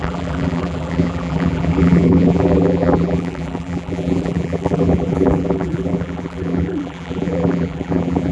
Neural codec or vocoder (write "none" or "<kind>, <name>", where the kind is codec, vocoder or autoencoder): vocoder, BigVGAN v2